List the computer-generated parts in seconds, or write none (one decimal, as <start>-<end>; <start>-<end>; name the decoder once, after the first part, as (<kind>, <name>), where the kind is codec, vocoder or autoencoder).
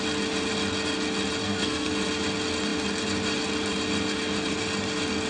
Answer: 1.4-1.9 (codec, SNAC)